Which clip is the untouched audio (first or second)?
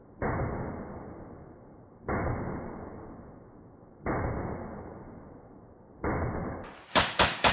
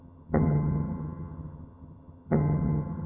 first